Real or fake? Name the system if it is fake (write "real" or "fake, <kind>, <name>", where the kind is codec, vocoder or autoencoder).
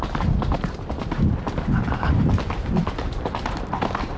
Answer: fake, vocoder, BigVGAN v2